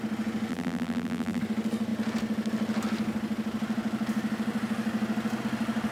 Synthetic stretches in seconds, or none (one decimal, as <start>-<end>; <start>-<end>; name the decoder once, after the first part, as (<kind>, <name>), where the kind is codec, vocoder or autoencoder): 0.5-1.4 (vocoder, BigVGAN v2)